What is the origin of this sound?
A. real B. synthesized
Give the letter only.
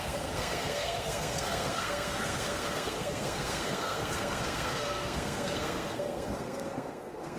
B